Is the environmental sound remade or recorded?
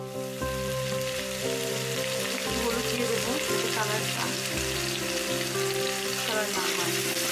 recorded